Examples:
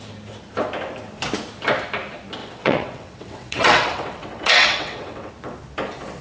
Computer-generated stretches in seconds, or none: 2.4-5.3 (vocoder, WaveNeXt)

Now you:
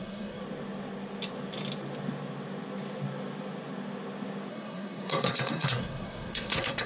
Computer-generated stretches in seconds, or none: 0.0-0.4 (codec, SNAC); 4.5-6.9

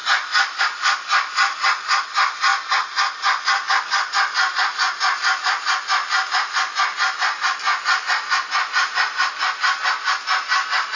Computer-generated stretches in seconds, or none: none

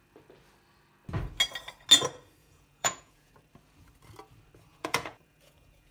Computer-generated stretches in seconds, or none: 2.4-3.3 (vocoder, Vocos); 4.7-5.9

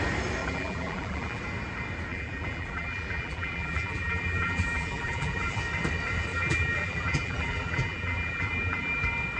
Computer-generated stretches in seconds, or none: 0.4-1.4 (vocoder, BigVGAN v2); 2.1-5.6; 6.3-9.0

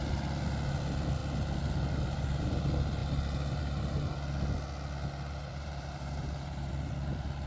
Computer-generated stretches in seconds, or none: 5.5-6.7 (vocoder, BigVGAN v2)